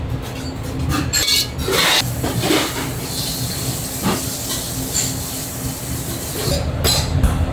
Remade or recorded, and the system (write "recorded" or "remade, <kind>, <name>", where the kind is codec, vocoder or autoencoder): recorded